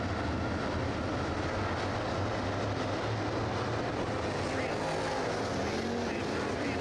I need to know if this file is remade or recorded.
recorded